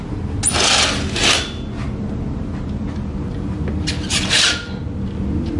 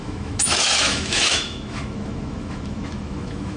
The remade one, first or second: second